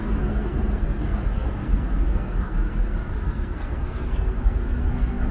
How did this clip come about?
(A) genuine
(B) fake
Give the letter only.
B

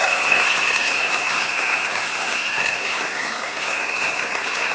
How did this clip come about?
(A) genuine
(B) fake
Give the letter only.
B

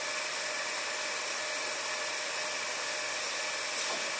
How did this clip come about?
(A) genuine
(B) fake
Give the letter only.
A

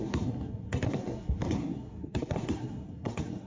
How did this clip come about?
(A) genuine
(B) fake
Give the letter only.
B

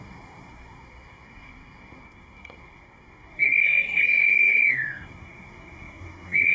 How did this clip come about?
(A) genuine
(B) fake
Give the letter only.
B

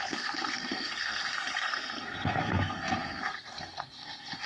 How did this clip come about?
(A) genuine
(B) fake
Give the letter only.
B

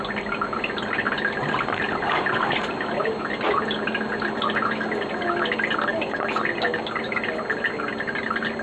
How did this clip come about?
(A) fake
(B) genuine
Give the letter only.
B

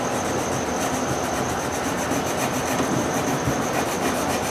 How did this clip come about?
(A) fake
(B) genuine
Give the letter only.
B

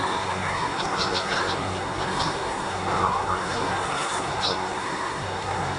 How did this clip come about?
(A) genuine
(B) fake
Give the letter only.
B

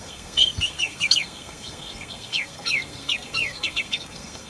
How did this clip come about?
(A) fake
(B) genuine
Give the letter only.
A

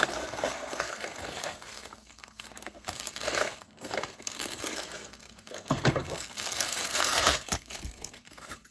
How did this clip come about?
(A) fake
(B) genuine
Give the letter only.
A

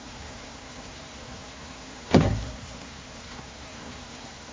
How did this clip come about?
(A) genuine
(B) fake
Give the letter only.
B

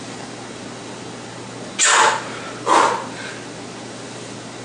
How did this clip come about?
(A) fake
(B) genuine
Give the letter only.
B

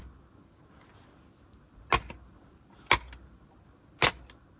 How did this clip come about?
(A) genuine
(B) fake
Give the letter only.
A